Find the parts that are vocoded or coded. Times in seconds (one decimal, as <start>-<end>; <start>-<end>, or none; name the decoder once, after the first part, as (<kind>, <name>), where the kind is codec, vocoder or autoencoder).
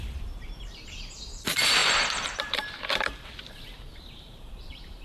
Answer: 0.0-5.0 (vocoder, BigVGAN v2)